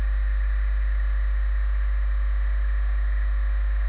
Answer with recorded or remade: recorded